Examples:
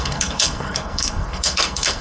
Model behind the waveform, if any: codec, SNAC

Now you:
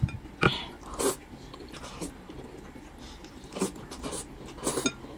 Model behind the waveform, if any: none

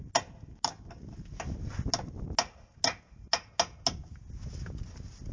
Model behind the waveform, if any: none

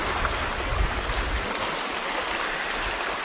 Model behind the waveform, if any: none